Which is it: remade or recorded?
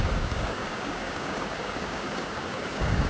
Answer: remade